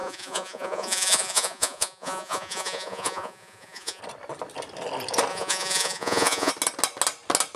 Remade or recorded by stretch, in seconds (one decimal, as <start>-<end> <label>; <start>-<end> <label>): 0.0-4.0 remade; 4.0-5.3 recorded; 5.3-6.5 remade; 6.5-7.6 recorded

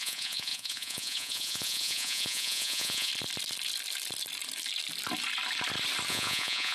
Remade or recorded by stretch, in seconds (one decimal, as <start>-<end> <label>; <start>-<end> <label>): 0.0-3.1 remade; 3.1-6.1 recorded; 6.1-6.7 remade